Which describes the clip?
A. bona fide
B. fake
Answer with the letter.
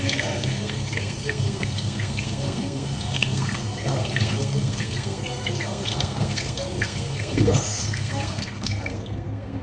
B